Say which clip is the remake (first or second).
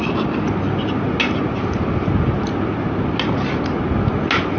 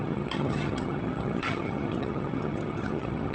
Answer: second